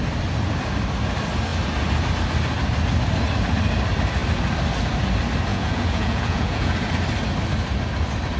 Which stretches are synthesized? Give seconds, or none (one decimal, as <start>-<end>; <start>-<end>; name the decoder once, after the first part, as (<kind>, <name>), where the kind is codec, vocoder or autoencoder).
5.5-6.9 (vocoder, Vocos)